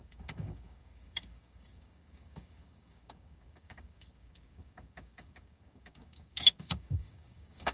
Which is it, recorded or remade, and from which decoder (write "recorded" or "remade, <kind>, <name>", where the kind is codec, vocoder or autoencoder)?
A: remade, codec, DAC